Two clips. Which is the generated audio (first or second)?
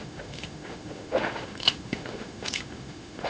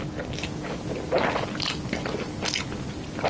first